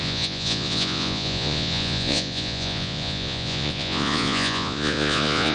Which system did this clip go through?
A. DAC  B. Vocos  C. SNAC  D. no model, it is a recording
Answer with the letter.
B